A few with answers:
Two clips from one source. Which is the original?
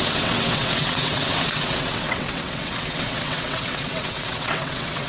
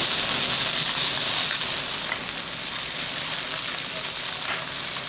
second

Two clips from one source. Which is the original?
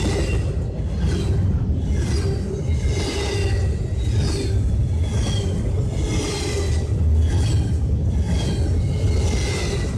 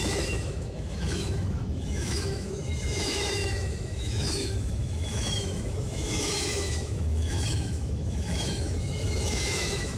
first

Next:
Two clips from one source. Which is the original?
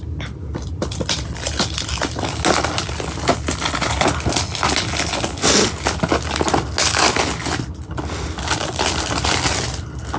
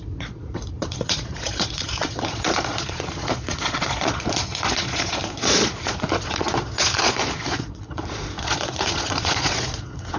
first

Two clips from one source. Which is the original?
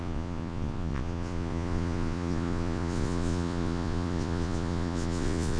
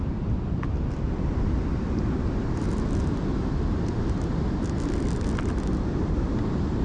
second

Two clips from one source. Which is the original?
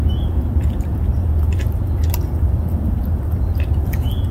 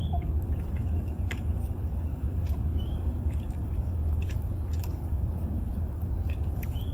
first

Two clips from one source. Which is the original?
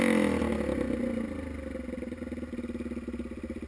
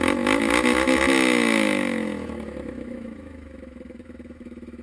first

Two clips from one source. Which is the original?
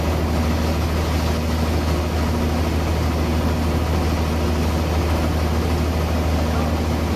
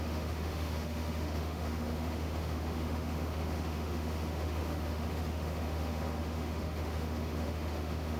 first